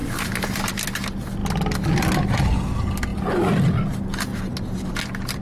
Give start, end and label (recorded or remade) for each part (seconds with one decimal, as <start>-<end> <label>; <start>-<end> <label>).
0.0-0.7 remade; 0.7-3.1 recorded; 3.1-3.7 remade; 3.7-4.3 recorded; 4.3-4.9 remade; 4.9-5.4 recorded